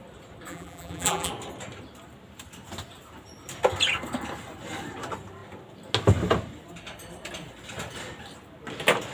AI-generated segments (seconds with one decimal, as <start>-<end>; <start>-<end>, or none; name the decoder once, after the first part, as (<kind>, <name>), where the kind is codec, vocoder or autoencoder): 0.5-1.3 (vocoder, BigVGAN v2)